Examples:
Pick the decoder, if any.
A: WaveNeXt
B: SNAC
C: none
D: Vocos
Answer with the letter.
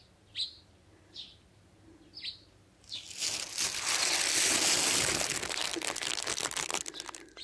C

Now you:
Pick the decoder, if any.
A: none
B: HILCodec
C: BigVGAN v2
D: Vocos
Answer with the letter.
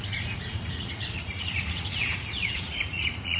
D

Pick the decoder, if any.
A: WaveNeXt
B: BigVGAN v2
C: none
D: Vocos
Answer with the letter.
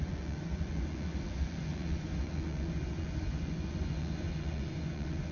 D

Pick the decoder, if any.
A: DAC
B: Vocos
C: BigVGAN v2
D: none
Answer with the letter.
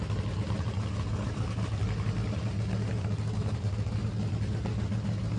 D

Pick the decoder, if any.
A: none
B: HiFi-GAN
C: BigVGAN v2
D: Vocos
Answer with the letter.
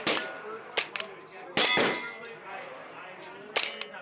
A